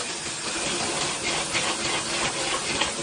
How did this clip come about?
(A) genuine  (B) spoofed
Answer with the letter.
A